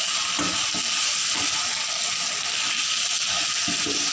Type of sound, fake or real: real